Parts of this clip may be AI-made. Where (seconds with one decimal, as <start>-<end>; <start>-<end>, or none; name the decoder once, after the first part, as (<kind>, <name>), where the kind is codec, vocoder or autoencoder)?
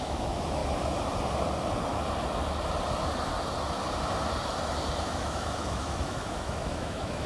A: 0.0-0.6 (autoencoder, DAC-VAE); 5.0-7.3